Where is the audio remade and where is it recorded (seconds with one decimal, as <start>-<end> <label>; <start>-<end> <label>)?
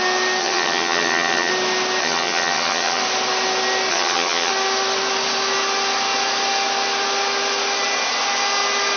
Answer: 0.0-0.4 recorded; 0.4-1.5 remade; 1.5-2.0 recorded; 2.0-3.0 remade; 3.0-3.9 recorded; 3.9-4.5 remade; 4.5-9.0 recorded